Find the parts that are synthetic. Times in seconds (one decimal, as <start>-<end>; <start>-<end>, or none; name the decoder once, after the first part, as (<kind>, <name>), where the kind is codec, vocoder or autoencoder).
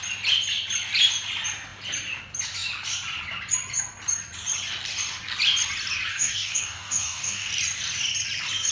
6.1-7.5 (codec, DAC)